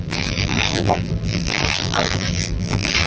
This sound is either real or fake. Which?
fake